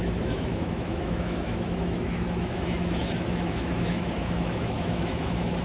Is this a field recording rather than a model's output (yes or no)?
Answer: no